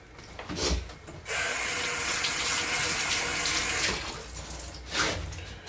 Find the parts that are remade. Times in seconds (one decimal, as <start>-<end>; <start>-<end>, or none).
1.5-2.9